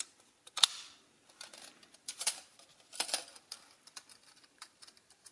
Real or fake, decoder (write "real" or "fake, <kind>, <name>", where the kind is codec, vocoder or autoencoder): fake, vocoder, BigVGAN v2